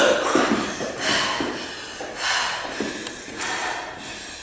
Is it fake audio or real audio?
real